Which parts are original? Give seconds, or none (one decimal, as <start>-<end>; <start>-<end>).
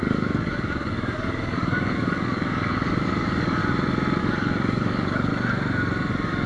3.6-4.2; 5.3-6.1